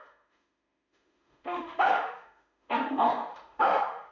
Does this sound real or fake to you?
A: fake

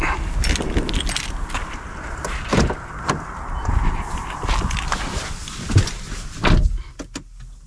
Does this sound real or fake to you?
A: real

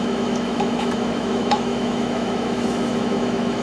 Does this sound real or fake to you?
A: fake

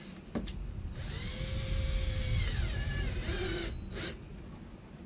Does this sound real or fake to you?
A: real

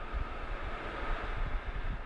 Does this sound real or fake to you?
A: real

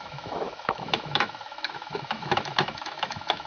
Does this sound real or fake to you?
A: fake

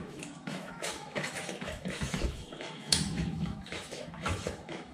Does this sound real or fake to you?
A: fake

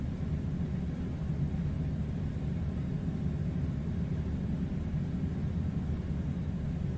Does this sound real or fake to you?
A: real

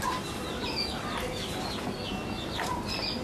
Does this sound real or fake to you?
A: real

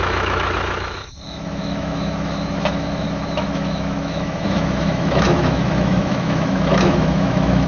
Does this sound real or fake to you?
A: fake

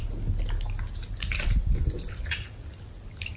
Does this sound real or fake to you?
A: real